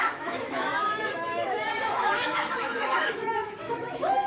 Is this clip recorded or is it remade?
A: remade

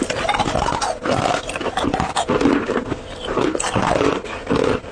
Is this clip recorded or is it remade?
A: recorded